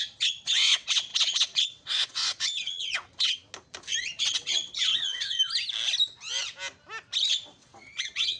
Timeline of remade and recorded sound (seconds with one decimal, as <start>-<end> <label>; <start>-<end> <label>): 0.0-3.4 remade; 3.4-4.0 recorded; 4.0-5.4 remade; 5.4-7.3 recorded; 7.3-8.4 remade